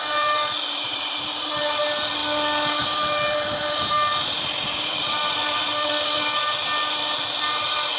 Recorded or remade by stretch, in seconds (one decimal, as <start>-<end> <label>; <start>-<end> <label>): 0.0-2.2 remade; 2.2-2.8 recorded; 2.8-4.1 remade; 4.1-4.8 recorded; 4.8-5.6 remade; 5.6-6.9 recorded; 6.9-8.0 remade